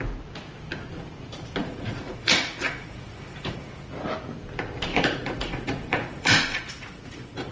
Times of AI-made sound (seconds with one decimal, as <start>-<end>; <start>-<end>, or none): 1.6-3.9; 4.9-7.5